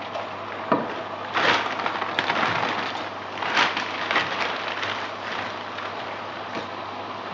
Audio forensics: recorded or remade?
recorded